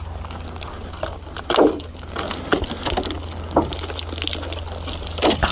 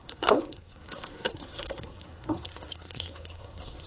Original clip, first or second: first